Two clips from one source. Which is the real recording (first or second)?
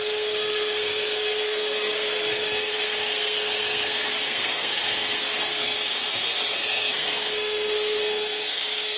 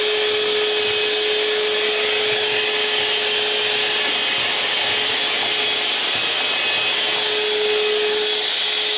second